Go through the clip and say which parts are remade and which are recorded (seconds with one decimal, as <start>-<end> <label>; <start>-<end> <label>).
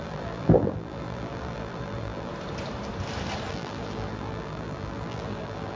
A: 0.0-2.3 remade; 2.3-3.5 recorded; 3.5-5.8 remade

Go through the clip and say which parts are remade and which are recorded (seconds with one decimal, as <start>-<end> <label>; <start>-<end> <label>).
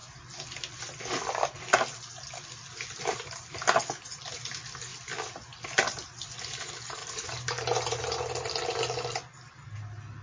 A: 0.0-7.0 recorded; 7.0-8.0 remade; 8.0-10.2 recorded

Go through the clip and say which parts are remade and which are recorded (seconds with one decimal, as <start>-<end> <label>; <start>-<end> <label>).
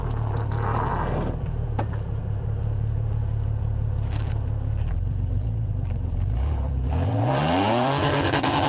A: 0.0-0.9 remade; 0.9-1.4 recorded; 1.4-8.7 remade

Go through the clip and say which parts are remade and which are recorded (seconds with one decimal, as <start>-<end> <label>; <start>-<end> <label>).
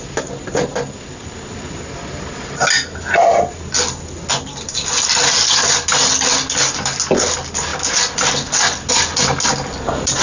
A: 0.0-10.2 recorded